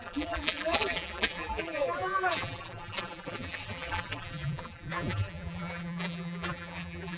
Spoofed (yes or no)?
yes